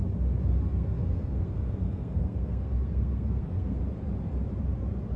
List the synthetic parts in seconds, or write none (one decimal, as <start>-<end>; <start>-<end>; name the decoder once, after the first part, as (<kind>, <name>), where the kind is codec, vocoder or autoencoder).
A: 0.7-3.8 (codec, SNAC)